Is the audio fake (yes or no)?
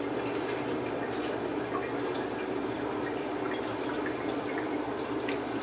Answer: no